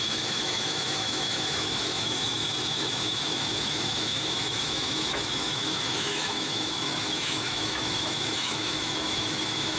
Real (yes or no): no